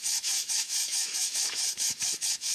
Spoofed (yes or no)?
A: yes